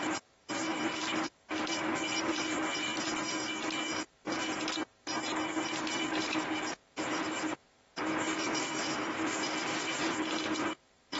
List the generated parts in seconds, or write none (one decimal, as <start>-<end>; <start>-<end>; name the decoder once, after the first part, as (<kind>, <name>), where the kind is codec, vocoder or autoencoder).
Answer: 0.0-2.9 (vocoder, BigVGAN v2); 5.9-11.2